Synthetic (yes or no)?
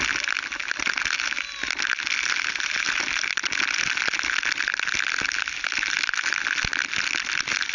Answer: no